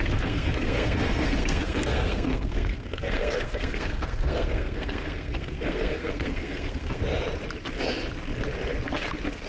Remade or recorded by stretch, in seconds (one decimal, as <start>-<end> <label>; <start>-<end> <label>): 0.0-7.0 remade; 7.0-9.5 recorded

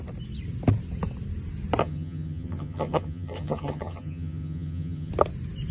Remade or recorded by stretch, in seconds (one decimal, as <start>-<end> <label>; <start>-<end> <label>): 0.0-1.8 recorded; 1.8-5.1 remade; 5.1-5.7 recorded

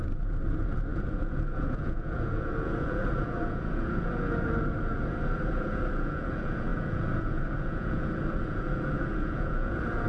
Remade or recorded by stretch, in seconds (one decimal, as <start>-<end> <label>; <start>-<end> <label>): 0.0-10.1 remade

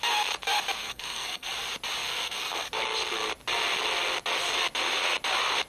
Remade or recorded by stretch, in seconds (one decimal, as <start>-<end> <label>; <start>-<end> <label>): 0.0-0.8 recorded; 0.8-1.5 remade; 1.5-2.0 recorded; 2.0-2.7 remade; 2.7-5.7 recorded

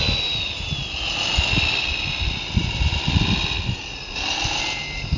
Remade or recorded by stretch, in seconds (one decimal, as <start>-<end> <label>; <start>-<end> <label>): 0.0-5.2 recorded